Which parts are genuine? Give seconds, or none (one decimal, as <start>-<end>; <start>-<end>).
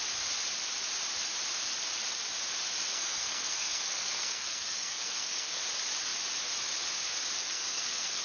0.0-2.9; 5.6-7.4